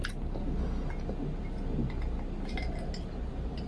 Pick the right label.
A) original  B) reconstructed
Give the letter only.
A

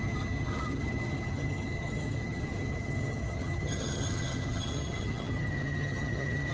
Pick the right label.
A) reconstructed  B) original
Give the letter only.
A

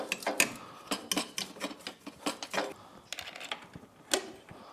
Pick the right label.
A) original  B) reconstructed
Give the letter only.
A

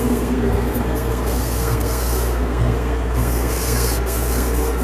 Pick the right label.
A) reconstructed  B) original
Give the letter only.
A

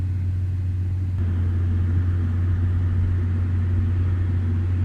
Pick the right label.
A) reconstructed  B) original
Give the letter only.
B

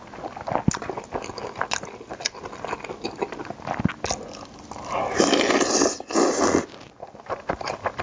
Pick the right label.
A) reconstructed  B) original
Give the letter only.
B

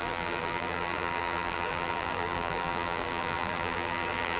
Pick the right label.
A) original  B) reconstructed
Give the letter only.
B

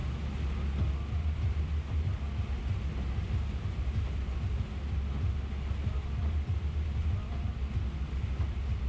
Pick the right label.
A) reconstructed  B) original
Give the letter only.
B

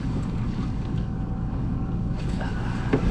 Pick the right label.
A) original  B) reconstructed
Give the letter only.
B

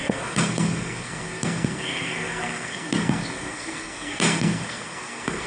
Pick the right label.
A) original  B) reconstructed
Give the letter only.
B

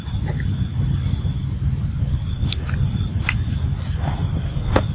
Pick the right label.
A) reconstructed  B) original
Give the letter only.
B